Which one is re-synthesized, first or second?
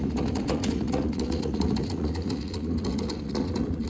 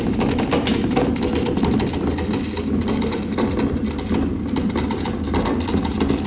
first